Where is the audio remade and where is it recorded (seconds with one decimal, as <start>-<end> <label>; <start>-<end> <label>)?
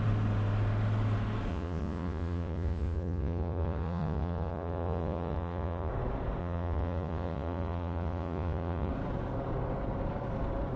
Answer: 0.0-1.5 recorded; 1.5-5.9 remade; 5.9-6.4 recorded; 6.4-8.9 remade; 8.9-10.8 recorded